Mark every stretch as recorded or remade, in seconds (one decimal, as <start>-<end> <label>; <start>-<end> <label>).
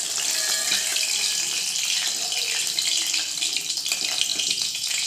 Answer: 0.0-4.3 recorded; 4.3-5.1 remade